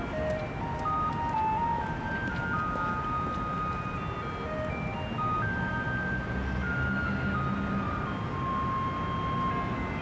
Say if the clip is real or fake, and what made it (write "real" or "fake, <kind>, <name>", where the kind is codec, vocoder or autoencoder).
real